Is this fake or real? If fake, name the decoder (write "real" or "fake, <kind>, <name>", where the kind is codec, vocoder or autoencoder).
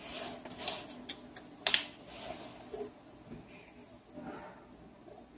real